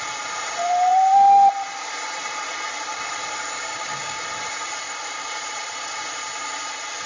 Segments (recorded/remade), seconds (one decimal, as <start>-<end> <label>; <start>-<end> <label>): 0.0-3.6 recorded; 3.6-4.2 remade; 4.2-7.1 recorded